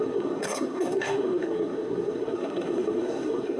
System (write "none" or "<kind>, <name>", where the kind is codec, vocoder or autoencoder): codec, SNAC